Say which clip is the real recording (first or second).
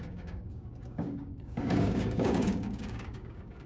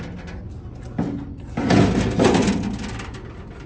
second